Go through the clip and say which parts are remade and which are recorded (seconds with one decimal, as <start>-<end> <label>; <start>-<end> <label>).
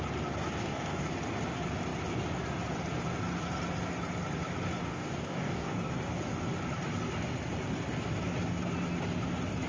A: 0.0-0.6 recorded; 0.6-1.1 remade; 1.1-4.8 recorded; 4.8-5.9 remade; 5.9-9.7 recorded